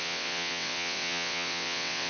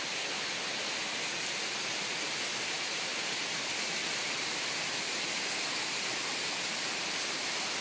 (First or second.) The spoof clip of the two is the first